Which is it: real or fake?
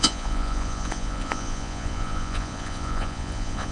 fake